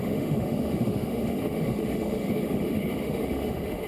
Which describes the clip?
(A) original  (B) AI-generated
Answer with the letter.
B